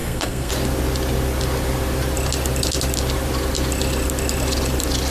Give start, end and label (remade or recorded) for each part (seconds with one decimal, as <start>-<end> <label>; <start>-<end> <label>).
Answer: 0.0-0.5 remade; 0.5-5.1 recorded